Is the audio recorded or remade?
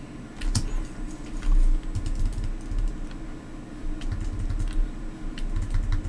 recorded